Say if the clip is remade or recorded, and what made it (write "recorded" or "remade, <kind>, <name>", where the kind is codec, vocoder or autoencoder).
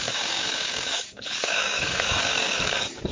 remade, codec, DAC